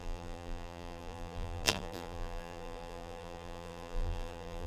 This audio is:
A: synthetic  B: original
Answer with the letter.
A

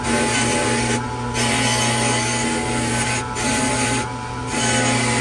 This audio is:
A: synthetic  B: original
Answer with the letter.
B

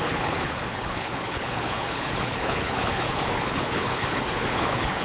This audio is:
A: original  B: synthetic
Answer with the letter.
B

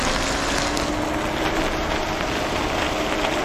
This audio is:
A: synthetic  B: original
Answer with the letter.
B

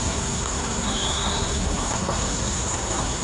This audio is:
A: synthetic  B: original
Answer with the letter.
A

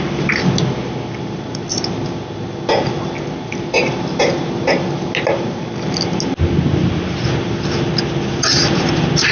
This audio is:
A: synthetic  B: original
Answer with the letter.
B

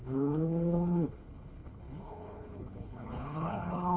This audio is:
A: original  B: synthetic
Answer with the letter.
B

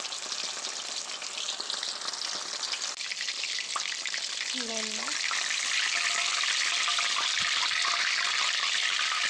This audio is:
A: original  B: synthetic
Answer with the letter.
A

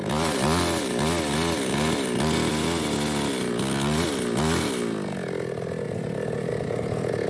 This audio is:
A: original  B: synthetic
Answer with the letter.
A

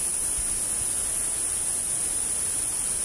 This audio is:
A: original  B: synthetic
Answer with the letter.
A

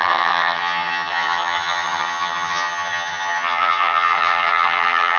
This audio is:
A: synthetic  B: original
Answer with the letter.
A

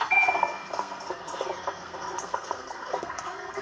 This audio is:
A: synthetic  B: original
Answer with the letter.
A